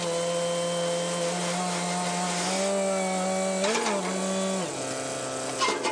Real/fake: real